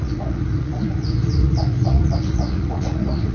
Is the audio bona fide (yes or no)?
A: no